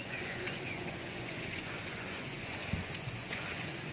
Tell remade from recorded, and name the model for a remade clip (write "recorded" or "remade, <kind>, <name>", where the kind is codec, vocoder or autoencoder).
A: remade, vocoder, Vocos